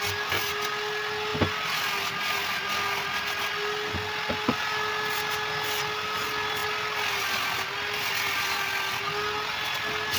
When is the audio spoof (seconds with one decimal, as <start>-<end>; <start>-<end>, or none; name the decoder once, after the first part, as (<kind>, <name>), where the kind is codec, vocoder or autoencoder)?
none